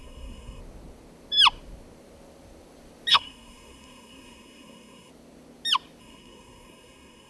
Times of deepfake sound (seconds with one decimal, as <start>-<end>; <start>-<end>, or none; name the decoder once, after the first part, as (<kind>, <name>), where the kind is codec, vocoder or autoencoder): 0.0-0.6 (codec, SNAC); 3.1-5.1; 6.0-7.3